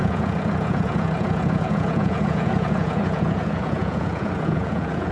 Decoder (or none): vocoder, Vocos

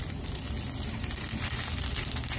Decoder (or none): none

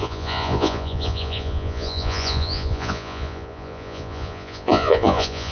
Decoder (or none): vocoder, Vocos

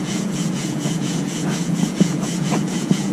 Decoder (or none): vocoder, Vocos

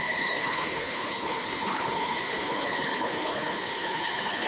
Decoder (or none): codec, HILCodec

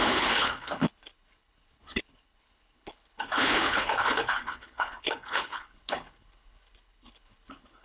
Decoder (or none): codec, HILCodec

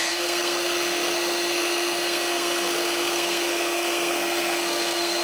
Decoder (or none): codec, SNAC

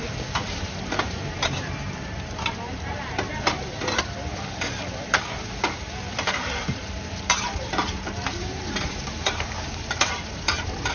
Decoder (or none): vocoder, BigVGAN v2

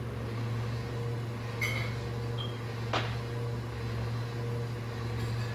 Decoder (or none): none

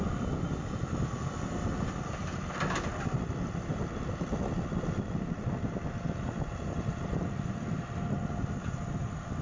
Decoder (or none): none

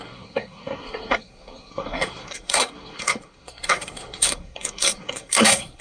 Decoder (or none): codec, SNAC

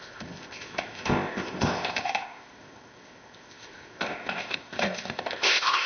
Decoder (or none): codec, ZipCodec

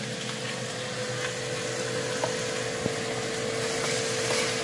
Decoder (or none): none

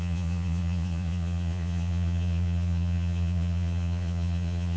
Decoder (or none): vocoder, Vocos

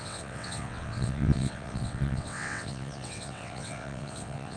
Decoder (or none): vocoder, WaveNeXt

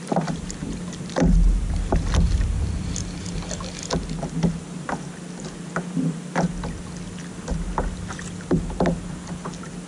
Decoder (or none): none